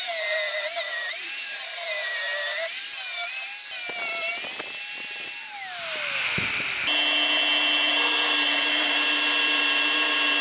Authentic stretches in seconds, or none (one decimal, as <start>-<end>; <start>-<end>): 3.5-7.9

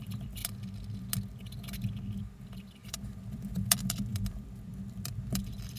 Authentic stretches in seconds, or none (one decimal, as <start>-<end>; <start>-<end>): 0.4-2.2

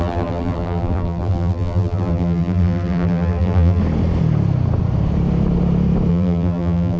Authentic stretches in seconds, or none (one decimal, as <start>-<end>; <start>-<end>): 3.8-6.1

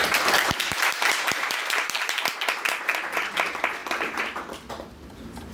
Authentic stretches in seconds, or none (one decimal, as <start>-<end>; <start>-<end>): 2.2-5.5

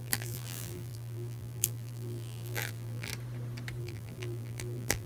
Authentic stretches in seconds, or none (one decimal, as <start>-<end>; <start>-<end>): 3.1-3.8

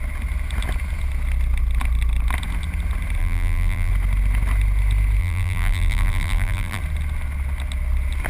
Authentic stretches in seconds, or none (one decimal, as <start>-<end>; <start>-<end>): 0.0-3.2; 3.9-5.2; 6.8-8.3

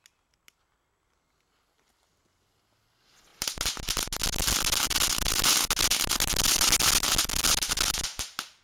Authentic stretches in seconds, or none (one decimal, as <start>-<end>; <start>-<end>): 0.0-8.6